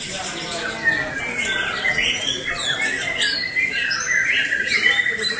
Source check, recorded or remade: recorded